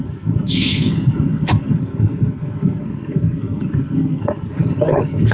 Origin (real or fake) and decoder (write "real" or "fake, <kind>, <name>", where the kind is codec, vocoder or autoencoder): fake, codec, SNAC